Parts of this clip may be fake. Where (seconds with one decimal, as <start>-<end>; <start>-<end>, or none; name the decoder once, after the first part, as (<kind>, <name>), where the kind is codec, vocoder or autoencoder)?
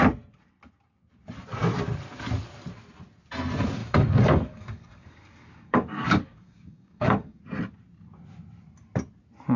3.8-7.4 (codec, DAC)